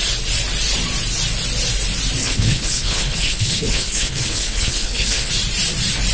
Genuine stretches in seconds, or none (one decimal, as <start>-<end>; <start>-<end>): 0.0-2.2; 5.3-6.1